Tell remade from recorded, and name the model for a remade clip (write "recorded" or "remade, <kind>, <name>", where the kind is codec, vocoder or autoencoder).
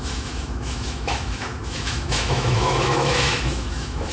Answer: remade, autoencoder, DAC-VAE